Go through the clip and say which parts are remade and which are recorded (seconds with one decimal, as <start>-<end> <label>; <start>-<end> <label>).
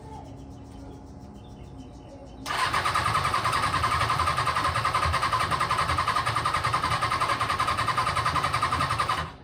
0.0-2.2 recorded; 2.2-4.0 remade; 4.0-9.4 recorded